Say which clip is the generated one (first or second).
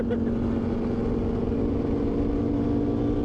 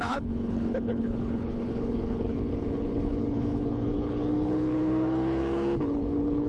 second